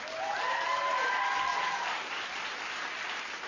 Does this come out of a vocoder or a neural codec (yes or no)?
no